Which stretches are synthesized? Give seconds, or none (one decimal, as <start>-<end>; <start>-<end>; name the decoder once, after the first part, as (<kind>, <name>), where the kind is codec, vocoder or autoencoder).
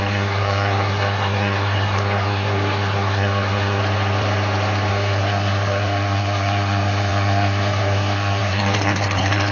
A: 0.0-3.8 (codec, SNAC); 4.9-9.5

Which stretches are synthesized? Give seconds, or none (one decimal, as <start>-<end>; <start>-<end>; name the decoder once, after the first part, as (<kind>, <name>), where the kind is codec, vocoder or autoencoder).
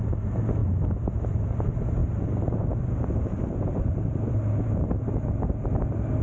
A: 2.0-5.1 (vocoder, BigVGAN v2)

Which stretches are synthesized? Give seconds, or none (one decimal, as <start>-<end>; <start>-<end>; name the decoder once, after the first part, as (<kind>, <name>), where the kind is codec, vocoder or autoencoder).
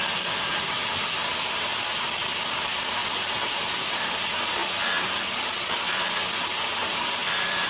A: 0.0-3.0 (vocoder, BigVGAN v2); 4.0-7.7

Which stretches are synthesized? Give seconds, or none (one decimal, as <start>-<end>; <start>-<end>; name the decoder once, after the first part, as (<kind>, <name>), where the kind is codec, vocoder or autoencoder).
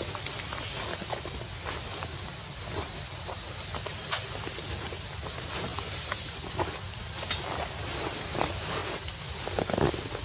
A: none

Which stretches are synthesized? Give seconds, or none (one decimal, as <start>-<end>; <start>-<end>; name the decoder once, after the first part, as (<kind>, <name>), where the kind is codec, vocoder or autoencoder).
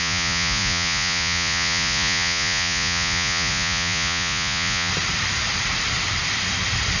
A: 0.0-4.9 (vocoder, Vocos)